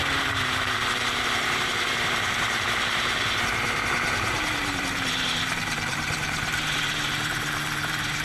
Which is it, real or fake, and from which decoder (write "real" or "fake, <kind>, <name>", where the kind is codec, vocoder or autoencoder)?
fake, vocoder, BigVGAN v2